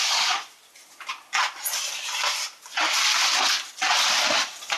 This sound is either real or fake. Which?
real